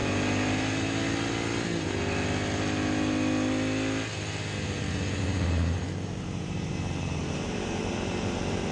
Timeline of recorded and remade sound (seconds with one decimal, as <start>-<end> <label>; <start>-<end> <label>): 0.0-5.2 recorded; 5.2-8.7 remade